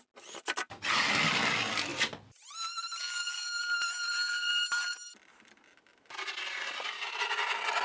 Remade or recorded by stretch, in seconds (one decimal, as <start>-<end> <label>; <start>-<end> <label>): 0.0-7.8 recorded